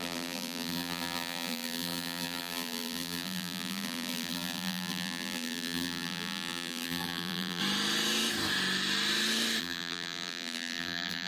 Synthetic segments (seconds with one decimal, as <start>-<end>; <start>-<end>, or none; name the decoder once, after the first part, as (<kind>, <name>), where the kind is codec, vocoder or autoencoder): 0.0-7.6 (vocoder, BigVGAN v2); 9.6-11.3